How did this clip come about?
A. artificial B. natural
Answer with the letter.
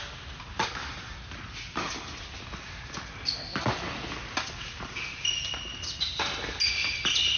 B